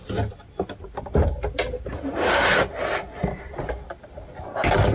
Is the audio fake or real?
real